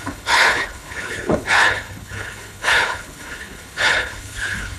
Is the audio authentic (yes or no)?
no